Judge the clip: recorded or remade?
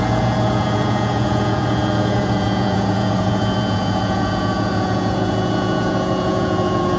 remade